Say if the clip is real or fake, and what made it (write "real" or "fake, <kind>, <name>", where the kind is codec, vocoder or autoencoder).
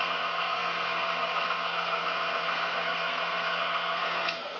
fake, codec, SNAC